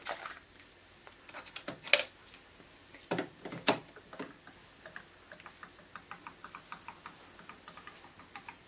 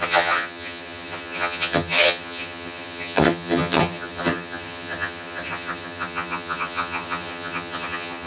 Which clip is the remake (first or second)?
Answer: second